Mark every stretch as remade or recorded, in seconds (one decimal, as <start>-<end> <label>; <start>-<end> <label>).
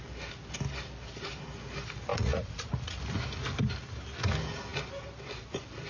0.0-2.1 recorded; 2.1-3.0 remade; 3.0-5.9 recorded